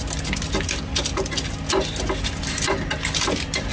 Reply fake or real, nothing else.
real